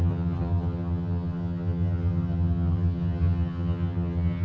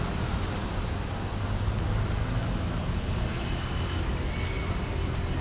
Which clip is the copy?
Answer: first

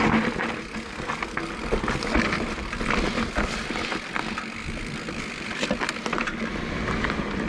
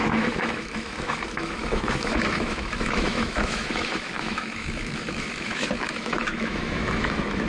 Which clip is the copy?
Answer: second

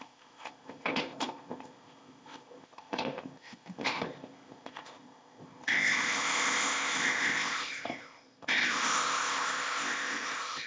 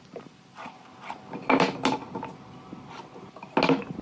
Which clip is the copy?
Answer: first